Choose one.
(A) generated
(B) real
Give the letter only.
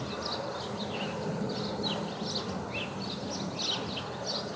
B